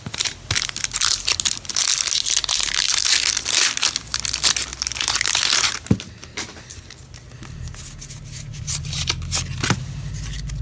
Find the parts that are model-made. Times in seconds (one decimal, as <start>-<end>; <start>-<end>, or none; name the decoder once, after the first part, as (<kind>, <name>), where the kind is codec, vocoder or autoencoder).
none